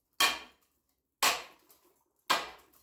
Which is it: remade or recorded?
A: recorded